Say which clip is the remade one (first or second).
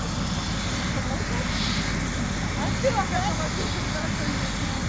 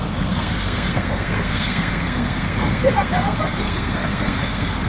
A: second